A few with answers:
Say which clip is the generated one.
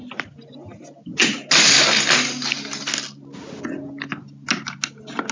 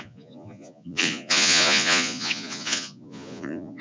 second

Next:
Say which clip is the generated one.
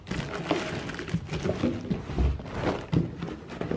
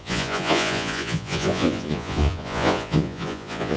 second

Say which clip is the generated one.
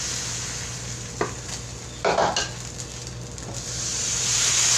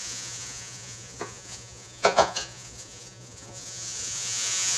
second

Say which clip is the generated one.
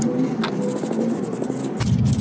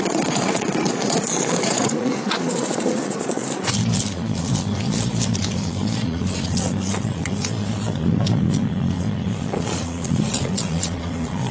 second